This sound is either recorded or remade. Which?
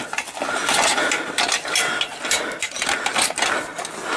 recorded